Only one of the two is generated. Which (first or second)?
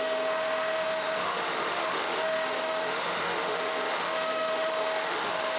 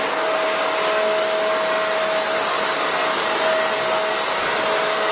first